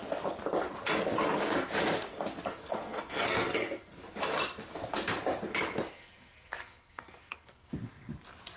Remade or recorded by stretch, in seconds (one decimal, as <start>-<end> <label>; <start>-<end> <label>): 0.0-2.5 recorded; 2.5-4.0 remade; 4.0-5.9 recorded; 5.9-7.7 remade; 7.7-8.6 recorded